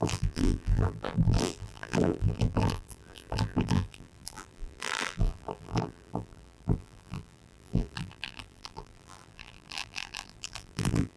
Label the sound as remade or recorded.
remade